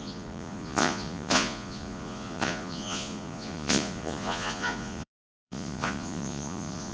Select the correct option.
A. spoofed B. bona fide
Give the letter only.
A